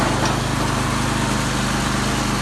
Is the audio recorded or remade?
recorded